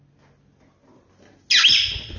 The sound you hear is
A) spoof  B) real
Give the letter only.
B